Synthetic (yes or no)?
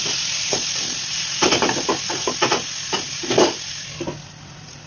no